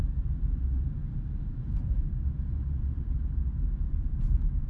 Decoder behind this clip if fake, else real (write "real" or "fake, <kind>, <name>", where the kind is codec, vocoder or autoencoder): fake, vocoder, BigVGAN v2